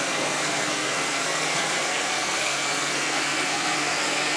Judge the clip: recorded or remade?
remade